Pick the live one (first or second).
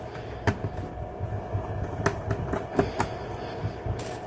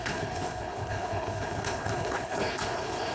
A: first